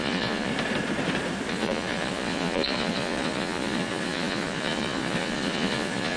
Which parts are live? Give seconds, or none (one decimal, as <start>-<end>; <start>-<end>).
0.5-1.5